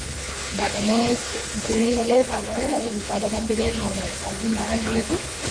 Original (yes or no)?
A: no